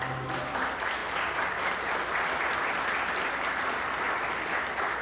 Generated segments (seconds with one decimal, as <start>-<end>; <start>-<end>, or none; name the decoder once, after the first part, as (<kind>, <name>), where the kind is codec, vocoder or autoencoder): none

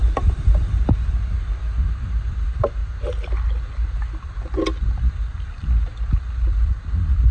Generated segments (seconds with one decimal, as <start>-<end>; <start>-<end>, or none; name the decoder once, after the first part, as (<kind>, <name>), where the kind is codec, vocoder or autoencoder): 0.0-2.8 (vocoder, BigVGAN v2); 4.6-7.3

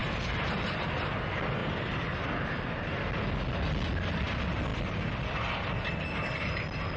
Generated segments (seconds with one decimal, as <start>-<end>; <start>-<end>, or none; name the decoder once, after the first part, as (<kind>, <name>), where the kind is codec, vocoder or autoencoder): 4.7-5.7 (vocoder, BigVGAN v2)

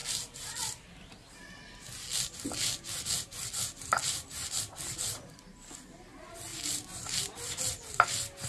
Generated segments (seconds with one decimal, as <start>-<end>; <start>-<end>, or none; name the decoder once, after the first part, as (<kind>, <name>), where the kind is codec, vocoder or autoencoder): none

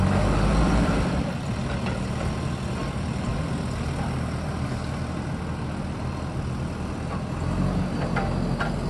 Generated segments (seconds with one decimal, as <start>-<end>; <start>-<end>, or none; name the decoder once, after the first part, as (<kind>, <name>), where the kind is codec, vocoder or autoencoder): 0.5-1.3 (vocoder, BigVGAN v2)

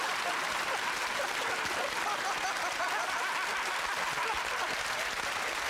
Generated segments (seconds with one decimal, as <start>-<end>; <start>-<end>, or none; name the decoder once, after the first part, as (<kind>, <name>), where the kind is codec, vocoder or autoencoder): none